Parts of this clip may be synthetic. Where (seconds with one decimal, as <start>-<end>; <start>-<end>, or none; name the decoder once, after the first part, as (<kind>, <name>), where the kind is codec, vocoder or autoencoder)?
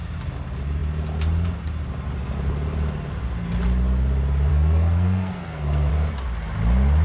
4.5-5.9 (codec, SNAC)